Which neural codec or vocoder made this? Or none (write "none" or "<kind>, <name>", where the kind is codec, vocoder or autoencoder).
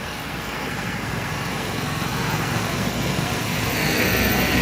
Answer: codec, SNAC